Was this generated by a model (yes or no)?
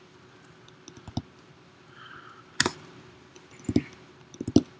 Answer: no